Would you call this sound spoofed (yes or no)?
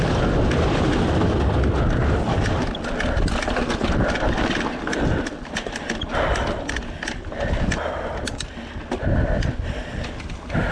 no